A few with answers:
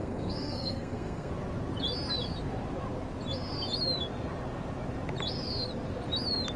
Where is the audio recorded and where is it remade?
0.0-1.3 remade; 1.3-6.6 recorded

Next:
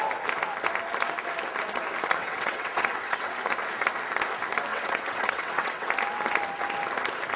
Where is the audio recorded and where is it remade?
0.0-2.2 recorded; 2.2-3.3 remade; 3.3-4.7 recorded; 4.7-5.9 remade; 5.9-7.4 recorded

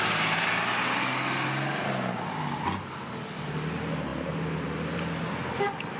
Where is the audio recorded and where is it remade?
0.0-6.0 recorded

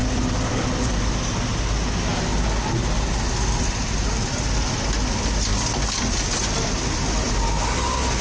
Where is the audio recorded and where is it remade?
0.0-1.0 remade; 1.0-5.5 recorded; 5.5-6.2 remade; 6.2-8.2 recorded

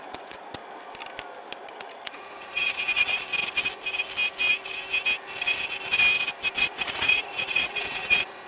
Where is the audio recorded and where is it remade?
0.0-0.6 remade; 0.6-1.7 recorded; 1.7-3.3 remade; 3.3-6.6 recorded; 6.6-8.5 remade